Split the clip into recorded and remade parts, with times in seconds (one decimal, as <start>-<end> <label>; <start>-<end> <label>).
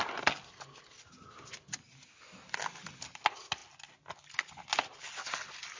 0.0-5.8 recorded